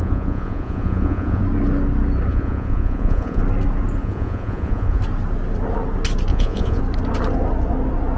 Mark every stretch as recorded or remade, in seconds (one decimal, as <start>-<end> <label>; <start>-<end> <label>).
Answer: 0.0-1.4 remade; 1.4-2.3 recorded; 2.3-3.4 remade; 3.4-4.0 recorded; 4.0-5.0 remade; 5.0-6.3 recorded; 6.3-6.8 remade; 6.8-8.2 recorded